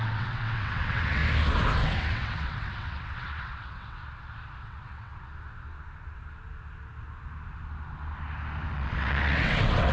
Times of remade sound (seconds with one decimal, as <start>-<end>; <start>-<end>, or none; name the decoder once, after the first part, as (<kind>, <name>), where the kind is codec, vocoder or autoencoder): 0.0-1.2 (vocoder, WaveNeXt); 1.8-4.0; 4.6-5.1; 8.7-9.9